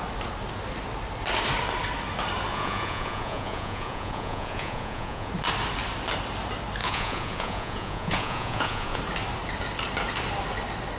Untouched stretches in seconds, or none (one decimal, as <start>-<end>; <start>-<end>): 0.0-2.5; 5.3-6.8; 9.0-11.0

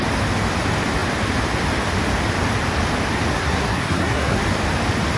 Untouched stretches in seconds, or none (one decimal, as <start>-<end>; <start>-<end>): 0.0-3.3; 4.4-5.2

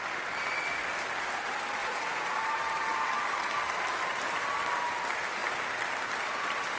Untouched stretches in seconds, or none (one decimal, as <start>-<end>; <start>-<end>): 0.0-1.8; 2.4-6.8

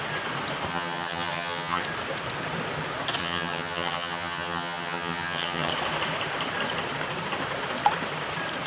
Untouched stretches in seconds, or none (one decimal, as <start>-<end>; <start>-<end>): 0.0-0.7; 1.8-3.2; 5.7-8.7

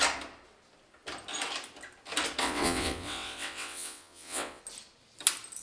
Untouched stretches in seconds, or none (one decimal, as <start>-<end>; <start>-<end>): 0.0-2.4; 4.6-5.6

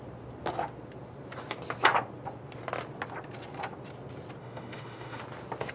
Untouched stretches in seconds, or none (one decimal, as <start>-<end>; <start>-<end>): 0.0-4.4; 5.2-5.7

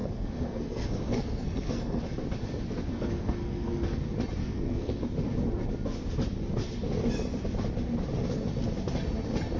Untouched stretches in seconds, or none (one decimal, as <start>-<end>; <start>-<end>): 2.0-2.9; 4.0-4.4; 5.0-9.6